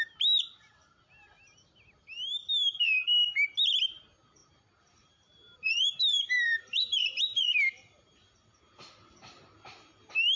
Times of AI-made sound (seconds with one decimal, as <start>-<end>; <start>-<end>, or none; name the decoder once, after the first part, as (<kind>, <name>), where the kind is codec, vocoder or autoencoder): 4.4-8.9 (vocoder, BigVGAN v2)